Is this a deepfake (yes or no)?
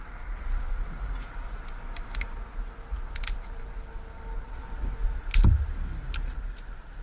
no